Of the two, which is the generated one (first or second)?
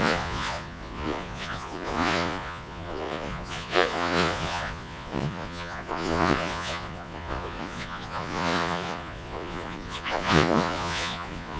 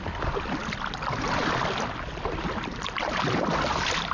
first